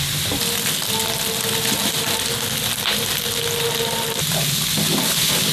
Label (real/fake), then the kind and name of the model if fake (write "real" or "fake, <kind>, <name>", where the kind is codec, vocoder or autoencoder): real